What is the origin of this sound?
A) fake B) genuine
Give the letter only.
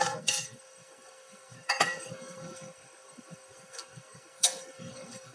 A